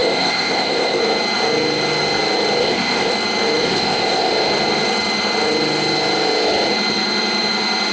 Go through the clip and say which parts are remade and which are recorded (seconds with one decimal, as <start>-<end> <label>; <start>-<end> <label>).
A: 0.0-1.0 remade; 1.0-2.6 recorded; 2.6-3.1 remade; 3.1-3.6 recorded; 3.6-4.3 remade; 4.3-7.9 recorded